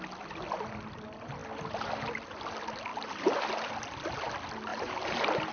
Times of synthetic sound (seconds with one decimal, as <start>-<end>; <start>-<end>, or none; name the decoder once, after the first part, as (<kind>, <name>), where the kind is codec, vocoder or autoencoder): 2.9-3.7 (vocoder, BigVGAN v2); 4.7-5.5